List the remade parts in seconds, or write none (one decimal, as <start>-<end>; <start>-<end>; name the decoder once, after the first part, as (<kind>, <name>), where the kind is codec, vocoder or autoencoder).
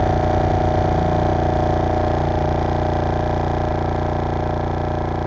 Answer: none